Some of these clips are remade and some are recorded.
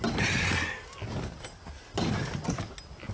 recorded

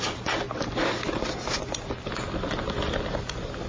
recorded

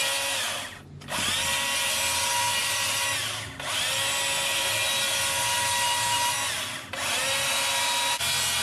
recorded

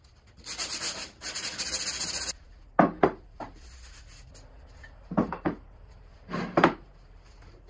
recorded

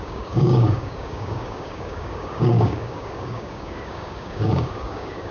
remade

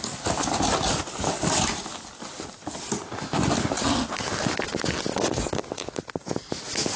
recorded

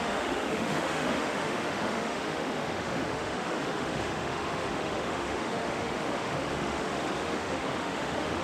remade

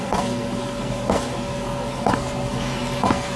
remade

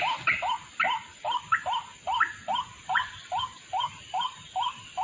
recorded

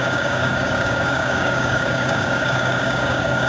remade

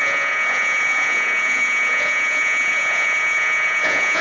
remade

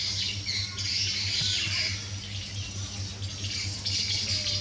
recorded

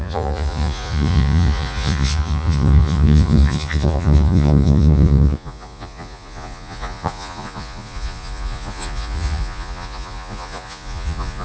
remade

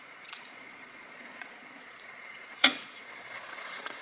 remade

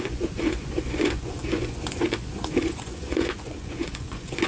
remade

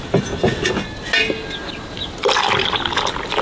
recorded